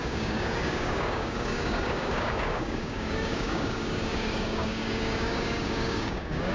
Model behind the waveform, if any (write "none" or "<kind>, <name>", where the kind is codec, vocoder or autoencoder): codec, DAC